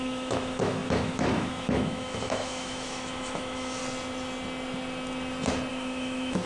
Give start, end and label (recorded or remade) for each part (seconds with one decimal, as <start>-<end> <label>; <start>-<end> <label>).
0.0-3.8 remade; 3.8-5.7 recorded; 5.7-6.5 remade